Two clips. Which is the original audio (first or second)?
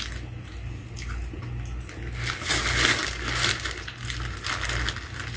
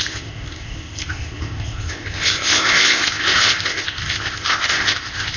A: first